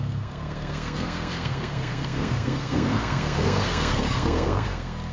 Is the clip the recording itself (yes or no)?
no